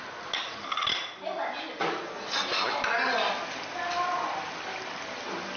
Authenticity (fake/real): real